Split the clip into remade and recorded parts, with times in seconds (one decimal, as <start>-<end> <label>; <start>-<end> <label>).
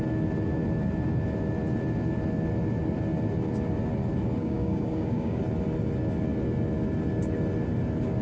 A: 0.0-4.4 recorded; 4.4-5.4 remade; 5.4-8.2 recorded